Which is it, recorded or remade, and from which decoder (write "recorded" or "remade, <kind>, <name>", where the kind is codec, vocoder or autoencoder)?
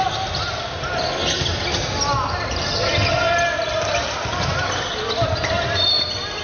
recorded